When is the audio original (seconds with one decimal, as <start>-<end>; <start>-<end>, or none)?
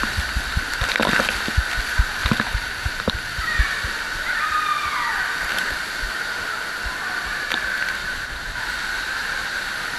0.0-2.2; 3.6-8.0; 8.6-10.0